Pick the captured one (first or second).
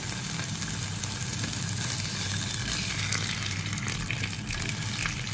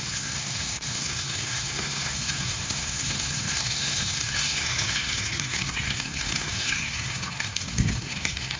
first